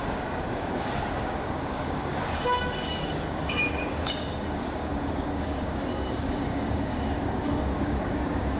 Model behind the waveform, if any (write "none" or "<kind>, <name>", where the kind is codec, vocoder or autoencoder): codec, DAC